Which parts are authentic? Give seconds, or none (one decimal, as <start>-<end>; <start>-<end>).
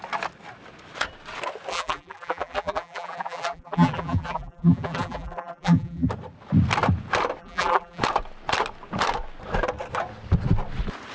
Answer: 0.0-1.7; 6.1-7.4; 8.0-11.1